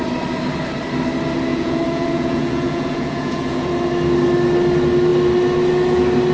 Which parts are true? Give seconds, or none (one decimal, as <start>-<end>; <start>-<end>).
0.0-1.5; 3.7-6.3